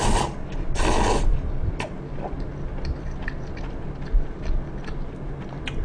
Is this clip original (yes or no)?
yes